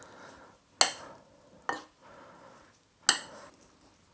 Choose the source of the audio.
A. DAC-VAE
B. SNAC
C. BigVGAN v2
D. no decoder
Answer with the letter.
D